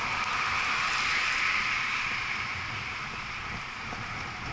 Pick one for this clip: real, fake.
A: real